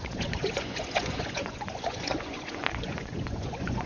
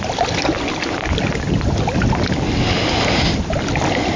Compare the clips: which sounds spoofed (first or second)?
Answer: first